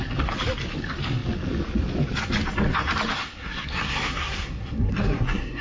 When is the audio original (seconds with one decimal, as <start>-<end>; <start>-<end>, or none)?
0.0-3.2